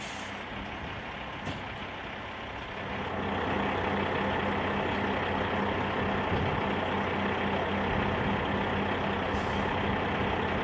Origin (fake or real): real